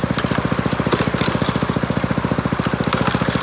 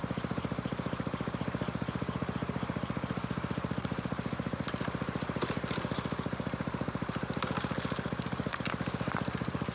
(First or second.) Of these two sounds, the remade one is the second